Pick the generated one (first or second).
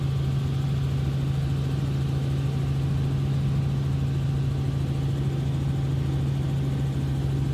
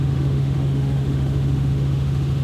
second